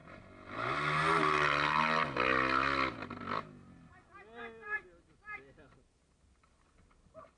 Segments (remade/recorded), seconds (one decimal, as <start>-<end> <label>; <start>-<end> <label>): 0.0-7.4 recorded